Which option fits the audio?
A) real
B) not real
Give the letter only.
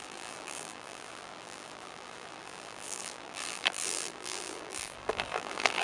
B